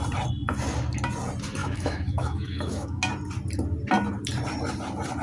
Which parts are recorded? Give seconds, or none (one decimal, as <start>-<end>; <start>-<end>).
0.0-1.6; 3.0-5.2